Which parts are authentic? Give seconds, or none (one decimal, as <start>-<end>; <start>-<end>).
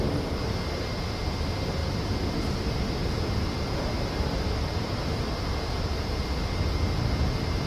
0.0-7.7